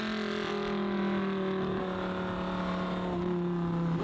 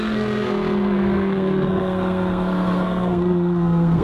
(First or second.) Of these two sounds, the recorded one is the first